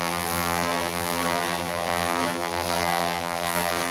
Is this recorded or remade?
remade